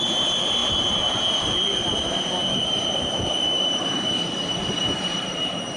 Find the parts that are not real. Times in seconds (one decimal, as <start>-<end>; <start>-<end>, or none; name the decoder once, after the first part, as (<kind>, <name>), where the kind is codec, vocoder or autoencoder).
0.0-5.8 (vocoder, BigVGAN v2)